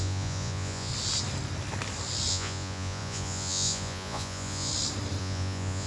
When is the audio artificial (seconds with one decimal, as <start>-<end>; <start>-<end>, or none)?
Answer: 0.0-0.9; 2.3-4.7; 5.2-5.9